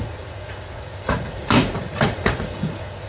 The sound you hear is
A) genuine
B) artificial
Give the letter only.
B